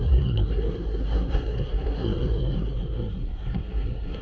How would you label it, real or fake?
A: fake